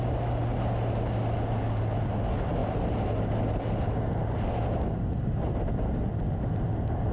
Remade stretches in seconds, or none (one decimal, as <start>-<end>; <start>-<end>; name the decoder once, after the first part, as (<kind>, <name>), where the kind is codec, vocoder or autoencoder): none